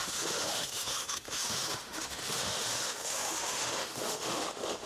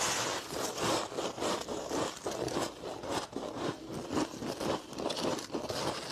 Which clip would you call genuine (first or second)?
second